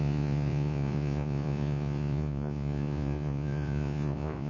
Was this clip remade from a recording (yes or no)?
yes